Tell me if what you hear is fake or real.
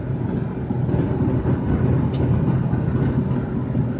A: real